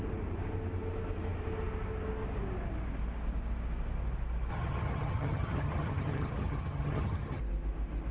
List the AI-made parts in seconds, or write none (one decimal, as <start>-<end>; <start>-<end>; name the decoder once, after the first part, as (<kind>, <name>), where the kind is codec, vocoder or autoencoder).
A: 4.5-7.4 (vocoder, HiFi-GAN)